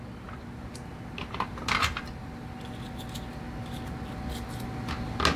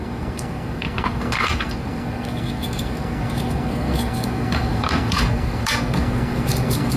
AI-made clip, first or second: second